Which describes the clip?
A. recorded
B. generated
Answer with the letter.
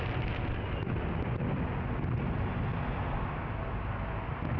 A